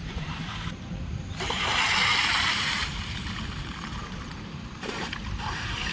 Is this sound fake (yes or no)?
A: yes